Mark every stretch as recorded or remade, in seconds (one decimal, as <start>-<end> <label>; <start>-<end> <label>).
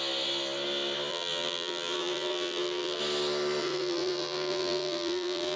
0.0-1.1 recorded; 1.1-3.0 remade; 3.0-3.6 recorded; 3.6-5.6 remade